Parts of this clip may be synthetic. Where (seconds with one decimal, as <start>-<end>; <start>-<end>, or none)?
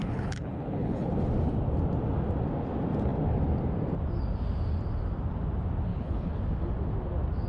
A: 0.0-1.1; 5.9-6.4